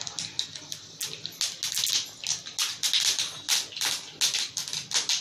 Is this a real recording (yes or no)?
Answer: yes